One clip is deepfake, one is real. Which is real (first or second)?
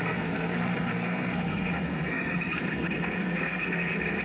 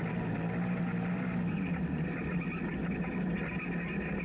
second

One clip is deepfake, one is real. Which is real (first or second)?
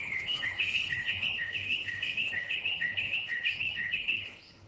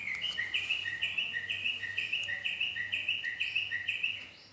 second